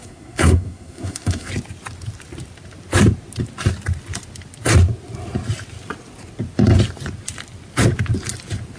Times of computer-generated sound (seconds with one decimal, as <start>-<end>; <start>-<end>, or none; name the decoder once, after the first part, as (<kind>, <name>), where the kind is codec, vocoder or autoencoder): 0.0-1.5 (codec, SNAC)

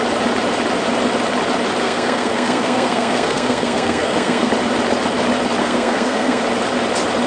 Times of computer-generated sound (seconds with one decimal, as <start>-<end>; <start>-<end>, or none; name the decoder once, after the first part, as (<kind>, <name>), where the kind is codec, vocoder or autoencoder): 1.8-4.5 (codec, SNAC); 5.6-6.4

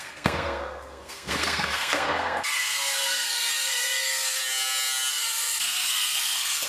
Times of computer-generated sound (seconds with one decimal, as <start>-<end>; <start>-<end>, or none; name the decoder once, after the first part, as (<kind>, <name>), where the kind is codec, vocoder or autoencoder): 0.0-4.4 (codec, SNAC); 5.1-6.7

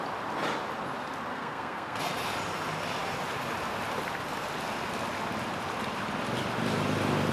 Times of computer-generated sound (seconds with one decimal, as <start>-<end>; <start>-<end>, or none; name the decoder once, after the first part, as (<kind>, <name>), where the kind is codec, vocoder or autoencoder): 1.3-2.0 (codec, SNAC)

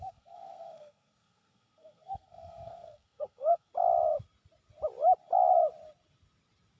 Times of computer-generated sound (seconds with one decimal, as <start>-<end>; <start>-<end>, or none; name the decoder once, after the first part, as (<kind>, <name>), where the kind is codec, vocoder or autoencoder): 0.0-3.7 (codec, SNAC)